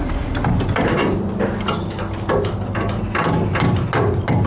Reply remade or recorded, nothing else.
recorded